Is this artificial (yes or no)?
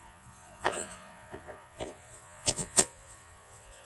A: yes